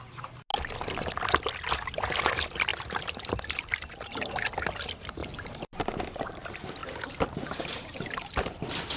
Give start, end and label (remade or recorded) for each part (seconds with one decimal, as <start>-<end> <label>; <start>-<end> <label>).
0.0-2.7 recorded; 2.7-4.3 remade; 4.3-5.2 recorded; 5.2-5.8 remade; 5.8-6.8 recorded; 6.8-8.6 remade; 8.6-9.0 recorded